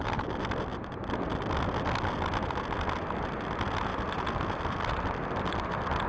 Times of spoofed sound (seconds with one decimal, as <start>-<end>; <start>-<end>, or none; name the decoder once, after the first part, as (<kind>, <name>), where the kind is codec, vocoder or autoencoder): none